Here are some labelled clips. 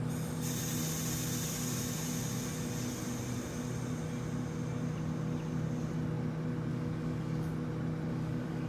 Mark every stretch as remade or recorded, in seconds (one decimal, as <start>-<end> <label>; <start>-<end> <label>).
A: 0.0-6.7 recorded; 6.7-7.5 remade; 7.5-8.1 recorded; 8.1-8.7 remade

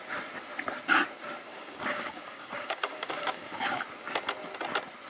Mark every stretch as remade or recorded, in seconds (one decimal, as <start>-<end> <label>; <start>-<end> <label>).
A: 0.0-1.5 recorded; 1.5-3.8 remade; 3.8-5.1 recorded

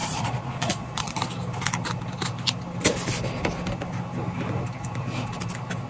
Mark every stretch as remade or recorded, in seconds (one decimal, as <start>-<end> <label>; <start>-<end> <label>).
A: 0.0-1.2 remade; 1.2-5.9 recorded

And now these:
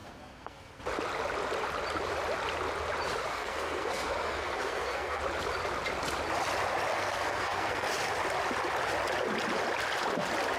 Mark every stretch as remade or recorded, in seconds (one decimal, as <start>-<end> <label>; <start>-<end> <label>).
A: 0.0-0.8 remade; 0.8-3.3 recorded; 3.3-5.2 remade; 5.2-6.9 recorded; 6.9-7.9 remade; 7.9-10.6 recorded

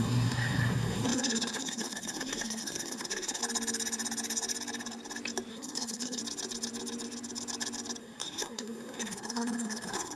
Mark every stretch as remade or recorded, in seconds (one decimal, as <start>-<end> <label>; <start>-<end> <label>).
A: 0.0-3.4 remade; 3.4-5.5 recorded; 5.5-6.2 remade; 6.2-8.0 recorded; 8.0-10.2 remade

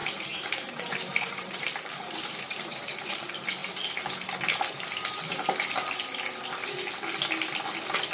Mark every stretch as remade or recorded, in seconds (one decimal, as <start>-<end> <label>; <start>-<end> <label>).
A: 0.0-3.1 remade; 3.1-8.1 recorded

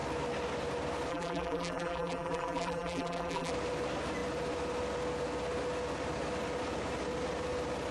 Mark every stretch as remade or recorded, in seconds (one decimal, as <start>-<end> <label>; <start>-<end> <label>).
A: 0.0-1.1 recorded; 1.1-3.5 remade; 3.5-7.9 recorded